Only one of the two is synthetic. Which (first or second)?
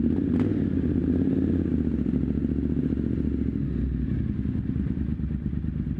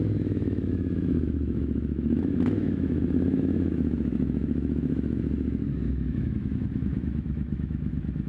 second